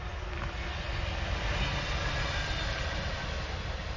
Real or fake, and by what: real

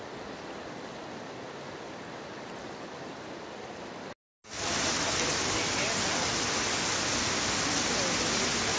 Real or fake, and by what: real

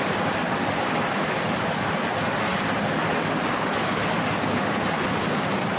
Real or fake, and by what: real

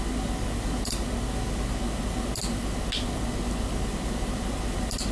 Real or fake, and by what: real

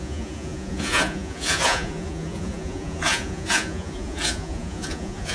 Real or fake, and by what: fake, vocoder, Vocos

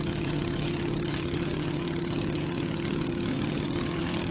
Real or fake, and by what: fake, vocoder, HiFi-GAN